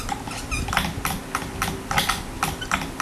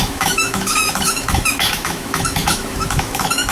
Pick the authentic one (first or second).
first